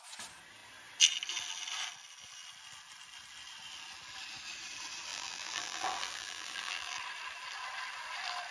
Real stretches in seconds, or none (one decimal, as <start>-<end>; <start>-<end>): 0.0-5.1; 7.0-8.5